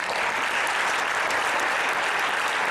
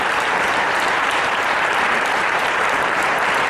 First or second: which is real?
first